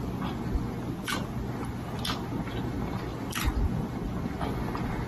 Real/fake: real